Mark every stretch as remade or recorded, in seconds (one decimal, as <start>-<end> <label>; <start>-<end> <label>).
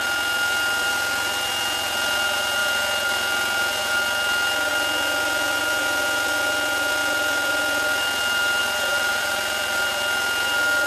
0.0-8.6 recorded; 8.6-9.9 remade; 9.9-10.9 recorded